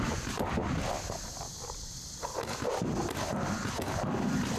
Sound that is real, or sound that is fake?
real